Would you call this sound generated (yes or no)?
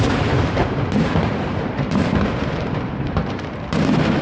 yes